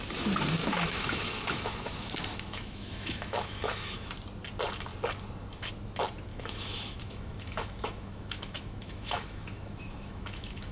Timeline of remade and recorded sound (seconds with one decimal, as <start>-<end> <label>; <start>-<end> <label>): 0.0-0.6 recorded; 0.6-4.1 remade; 4.1-6.3 recorded; 6.3-10.7 remade

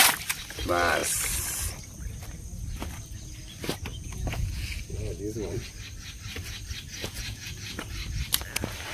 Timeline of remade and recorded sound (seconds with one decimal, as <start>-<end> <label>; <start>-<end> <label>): 0.0-3.9 recorded; 3.9-4.6 remade; 4.6-7.0 recorded; 7.0-7.5 remade; 7.5-8.9 recorded

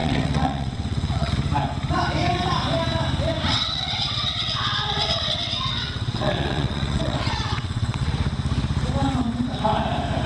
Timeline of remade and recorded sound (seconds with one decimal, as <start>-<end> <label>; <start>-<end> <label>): 0.0-1.3 remade; 1.3-3.5 recorded; 3.5-8.1 remade; 8.1-10.3 recorded